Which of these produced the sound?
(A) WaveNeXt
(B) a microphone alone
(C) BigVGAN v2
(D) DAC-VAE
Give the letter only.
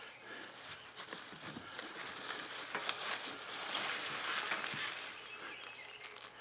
B